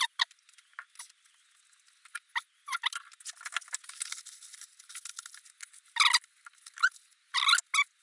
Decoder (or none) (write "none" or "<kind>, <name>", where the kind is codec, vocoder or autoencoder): none